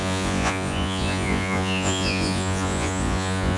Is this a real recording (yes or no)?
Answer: no